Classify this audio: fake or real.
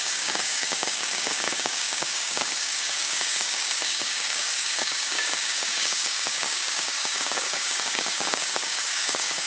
fake